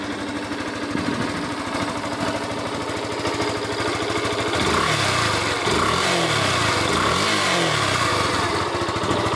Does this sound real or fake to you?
real